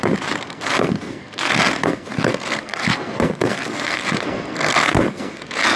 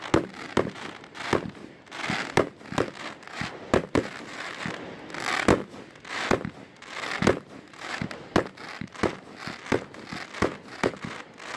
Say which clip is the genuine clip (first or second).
second